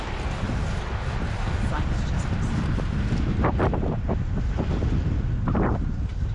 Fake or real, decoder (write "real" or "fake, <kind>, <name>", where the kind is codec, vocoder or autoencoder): real